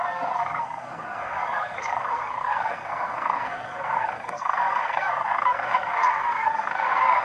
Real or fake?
fake